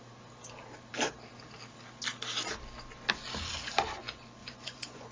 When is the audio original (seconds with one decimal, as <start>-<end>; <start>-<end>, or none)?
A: 0.0-4.4